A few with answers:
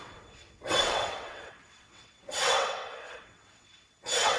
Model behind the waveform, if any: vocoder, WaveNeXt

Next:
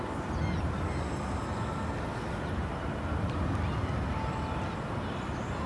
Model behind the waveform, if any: none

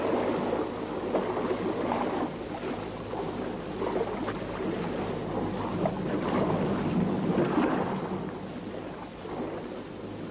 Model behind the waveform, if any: none